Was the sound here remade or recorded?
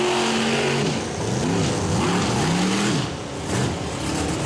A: recorded